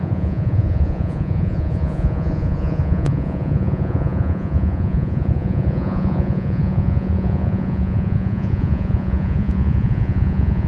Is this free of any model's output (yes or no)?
no